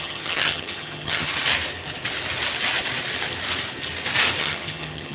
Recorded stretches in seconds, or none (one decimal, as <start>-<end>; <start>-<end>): 1.3-4.4

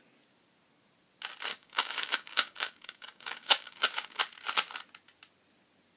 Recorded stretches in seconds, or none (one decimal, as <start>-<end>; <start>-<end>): 0.0-1.5; 4.2-6.0